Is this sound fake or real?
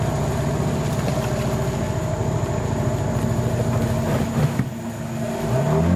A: real